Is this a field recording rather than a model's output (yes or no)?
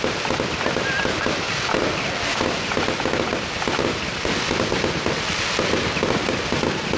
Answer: yes